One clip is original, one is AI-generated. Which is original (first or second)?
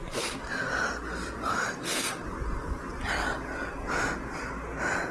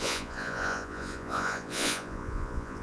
first